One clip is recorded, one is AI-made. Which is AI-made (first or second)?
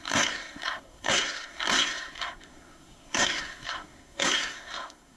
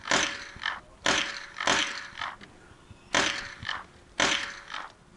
first